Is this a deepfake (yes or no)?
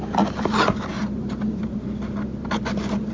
no